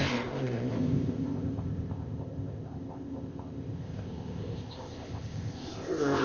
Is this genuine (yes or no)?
no